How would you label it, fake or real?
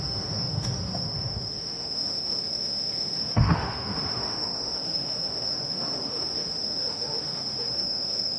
fake